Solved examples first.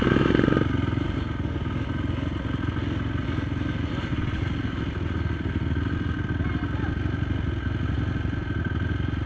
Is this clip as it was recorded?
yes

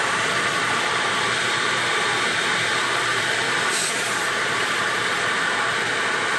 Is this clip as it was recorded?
no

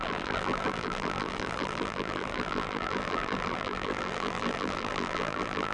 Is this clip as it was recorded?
no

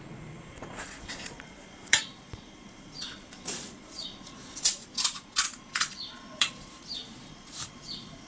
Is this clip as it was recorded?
no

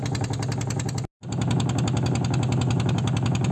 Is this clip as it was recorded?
yes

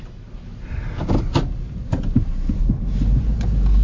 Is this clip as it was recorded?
yes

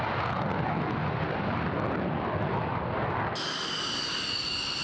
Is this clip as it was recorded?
yes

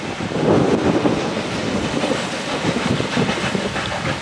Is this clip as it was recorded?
yes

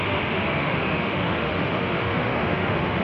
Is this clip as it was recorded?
no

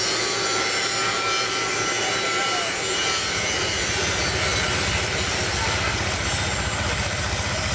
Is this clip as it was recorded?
yes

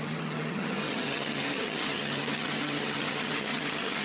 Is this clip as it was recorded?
no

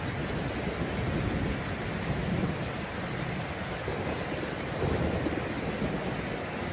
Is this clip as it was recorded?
yes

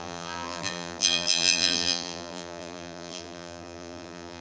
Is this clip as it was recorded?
no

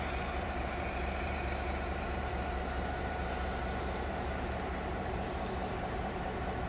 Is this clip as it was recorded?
no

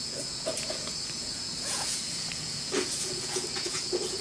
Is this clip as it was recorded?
no